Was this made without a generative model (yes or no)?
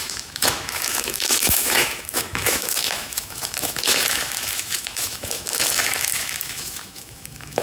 no